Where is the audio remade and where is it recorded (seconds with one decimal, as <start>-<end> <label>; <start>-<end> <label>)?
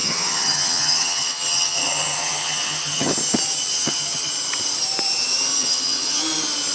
0.0-3.1 remade; 3.1-3.7 recorded; 3.7-4.3 remade; 4.3-5.5 recorded; 5.5-6.2 remade; 6.2-6.7 recorded